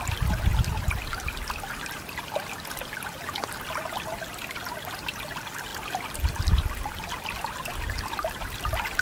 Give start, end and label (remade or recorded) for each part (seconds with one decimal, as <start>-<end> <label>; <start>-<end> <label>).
0.0-9.0 recorded